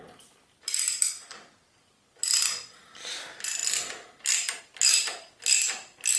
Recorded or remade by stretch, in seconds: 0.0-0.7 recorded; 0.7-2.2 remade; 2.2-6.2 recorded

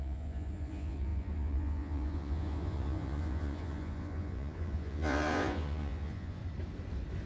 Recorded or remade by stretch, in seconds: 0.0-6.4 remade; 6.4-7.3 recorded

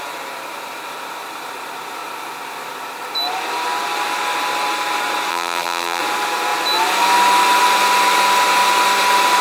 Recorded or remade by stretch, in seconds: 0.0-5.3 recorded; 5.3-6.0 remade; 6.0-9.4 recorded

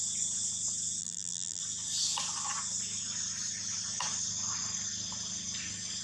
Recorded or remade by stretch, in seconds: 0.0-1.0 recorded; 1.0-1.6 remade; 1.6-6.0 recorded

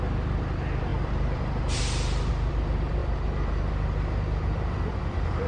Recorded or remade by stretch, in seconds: 0.0-3.0 remade; 3.0-4.9 recorded; 4.9-5.5 remade